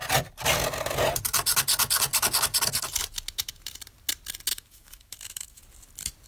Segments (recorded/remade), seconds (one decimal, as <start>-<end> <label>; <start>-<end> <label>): 0.0-4.5 recorded; 4.5-5.6 remade; 5.6-6.3 recorded